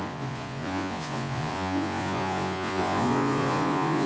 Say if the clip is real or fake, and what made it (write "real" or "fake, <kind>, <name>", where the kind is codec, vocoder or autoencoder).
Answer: fake, vocoder, Vocos